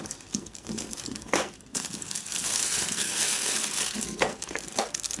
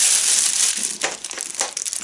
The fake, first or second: first